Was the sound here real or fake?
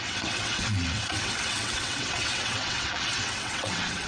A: fake